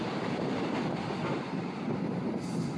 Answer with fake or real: real